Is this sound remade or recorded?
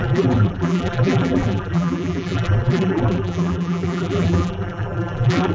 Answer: remade